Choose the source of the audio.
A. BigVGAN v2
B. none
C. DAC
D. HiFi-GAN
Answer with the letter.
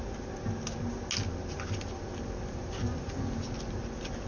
B